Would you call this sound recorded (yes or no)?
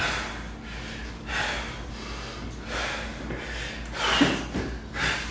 yes